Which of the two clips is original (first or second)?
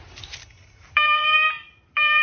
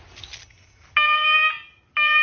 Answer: second